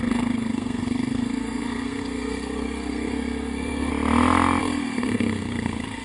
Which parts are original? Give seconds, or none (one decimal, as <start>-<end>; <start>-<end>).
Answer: 3.9-4.6